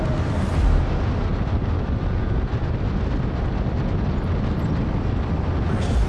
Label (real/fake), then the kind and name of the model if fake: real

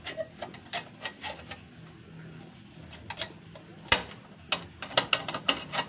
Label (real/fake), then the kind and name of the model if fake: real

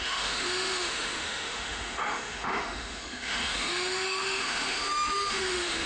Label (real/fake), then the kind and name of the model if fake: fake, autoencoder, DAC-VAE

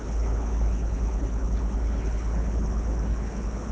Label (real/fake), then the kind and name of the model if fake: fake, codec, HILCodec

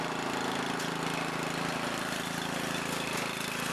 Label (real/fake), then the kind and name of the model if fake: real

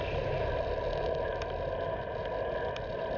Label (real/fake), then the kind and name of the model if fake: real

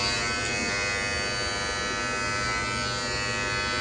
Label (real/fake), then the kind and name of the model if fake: real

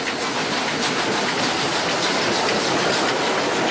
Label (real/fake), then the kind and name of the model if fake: real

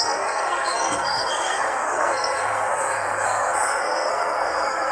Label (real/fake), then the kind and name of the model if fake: fake, codec, SNAC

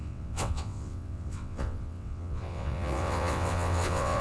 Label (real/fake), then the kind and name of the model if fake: fake, vocoder, WaveNeXt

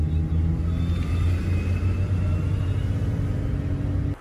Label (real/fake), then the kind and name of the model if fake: real